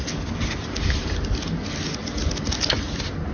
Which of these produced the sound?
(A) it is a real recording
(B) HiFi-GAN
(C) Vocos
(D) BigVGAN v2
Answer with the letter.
A